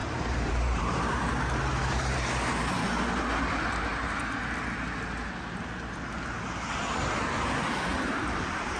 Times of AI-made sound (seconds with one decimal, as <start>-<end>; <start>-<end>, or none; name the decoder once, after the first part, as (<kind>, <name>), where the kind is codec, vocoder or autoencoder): 0.0-1.2 (vocoder, BigVGAN v2); 7.9-8.8